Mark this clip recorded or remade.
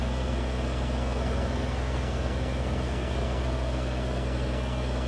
remade